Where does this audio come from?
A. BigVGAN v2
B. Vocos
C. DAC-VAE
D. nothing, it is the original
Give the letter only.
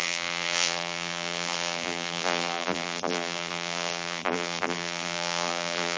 A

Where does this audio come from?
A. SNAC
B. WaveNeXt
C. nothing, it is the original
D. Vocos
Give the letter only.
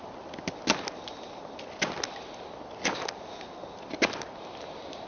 C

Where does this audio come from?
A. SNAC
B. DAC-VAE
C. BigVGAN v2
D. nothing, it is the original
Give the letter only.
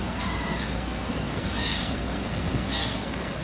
A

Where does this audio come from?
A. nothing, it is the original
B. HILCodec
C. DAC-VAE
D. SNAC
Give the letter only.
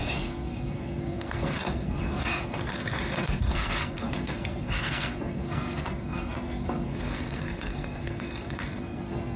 D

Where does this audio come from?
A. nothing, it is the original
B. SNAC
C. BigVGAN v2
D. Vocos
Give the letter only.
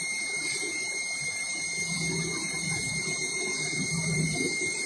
C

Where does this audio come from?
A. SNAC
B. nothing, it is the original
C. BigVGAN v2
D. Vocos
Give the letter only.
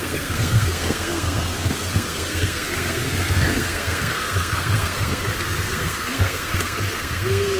A